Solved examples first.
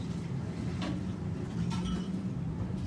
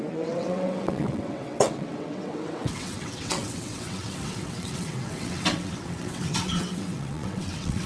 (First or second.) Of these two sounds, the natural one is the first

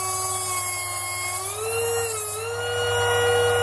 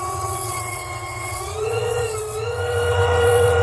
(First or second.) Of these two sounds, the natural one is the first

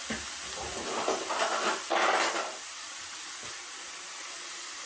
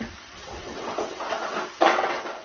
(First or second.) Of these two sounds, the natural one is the first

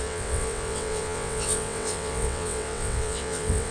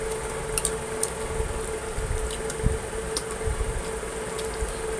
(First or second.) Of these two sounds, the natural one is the second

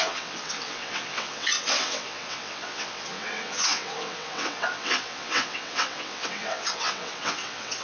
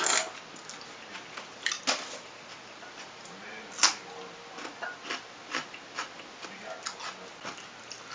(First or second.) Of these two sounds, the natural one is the second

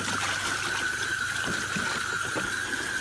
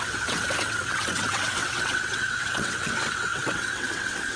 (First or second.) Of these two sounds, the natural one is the first